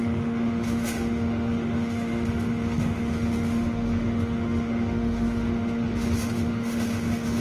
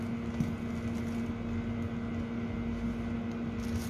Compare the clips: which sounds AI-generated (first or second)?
first